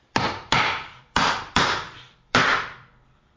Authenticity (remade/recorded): remade